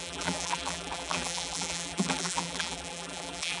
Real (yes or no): no